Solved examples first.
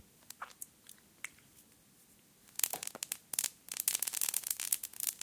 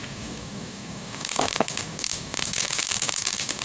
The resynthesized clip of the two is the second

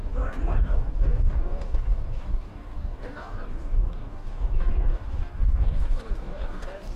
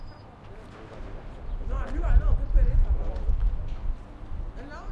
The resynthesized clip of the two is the first